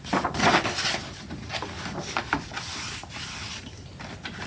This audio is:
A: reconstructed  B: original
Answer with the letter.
B